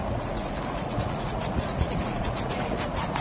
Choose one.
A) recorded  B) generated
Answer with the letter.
B